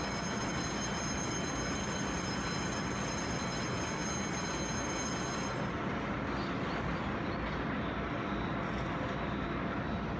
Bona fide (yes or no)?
yes